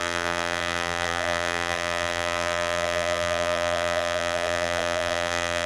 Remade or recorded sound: remade